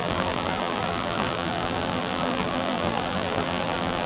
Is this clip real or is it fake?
fake